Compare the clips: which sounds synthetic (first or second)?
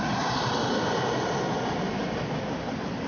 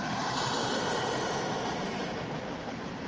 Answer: second